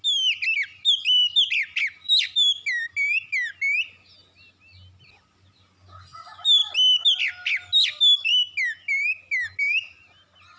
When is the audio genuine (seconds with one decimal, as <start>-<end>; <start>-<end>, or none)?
0.0-10.6